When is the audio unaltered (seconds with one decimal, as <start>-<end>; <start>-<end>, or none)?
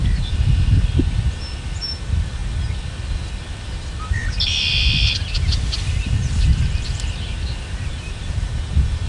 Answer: 2.4-3.1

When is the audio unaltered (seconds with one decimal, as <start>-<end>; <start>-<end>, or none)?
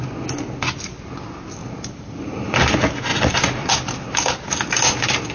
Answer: 0.0-1.6; 2.6-5.3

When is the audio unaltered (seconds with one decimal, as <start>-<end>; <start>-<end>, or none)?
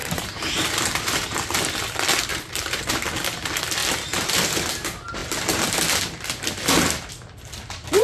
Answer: 0.7-2.3; 2.9-3.8; 4.5-8.0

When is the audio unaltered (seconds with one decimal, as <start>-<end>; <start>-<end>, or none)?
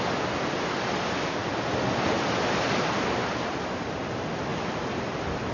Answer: 0.0-5.5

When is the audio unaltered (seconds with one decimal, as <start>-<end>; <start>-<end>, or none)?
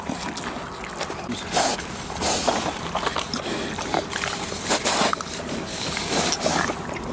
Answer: 0.0-5.7; 6.3-7.1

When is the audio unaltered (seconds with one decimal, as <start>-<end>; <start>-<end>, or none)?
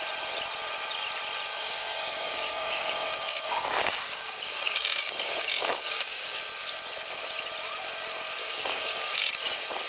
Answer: 0.0-1.5; 6.4-8.4; 9.3-9.9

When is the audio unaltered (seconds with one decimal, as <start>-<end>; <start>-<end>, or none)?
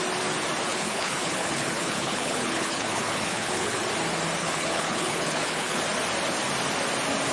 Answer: 0.0-0.7; 3.8-4.4; 5.8-7.3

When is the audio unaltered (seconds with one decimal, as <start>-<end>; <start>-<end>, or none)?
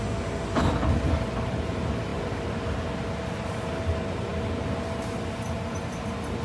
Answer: 0.0-6.4